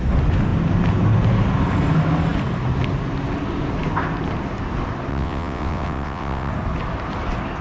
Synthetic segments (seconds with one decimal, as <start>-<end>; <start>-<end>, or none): 5.1-6.5